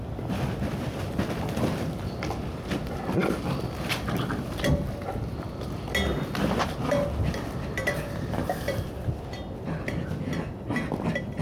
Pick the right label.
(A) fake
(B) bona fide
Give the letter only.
B